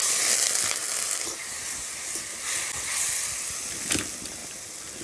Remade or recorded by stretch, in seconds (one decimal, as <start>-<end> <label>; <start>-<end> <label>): 0.0-5.0 recorded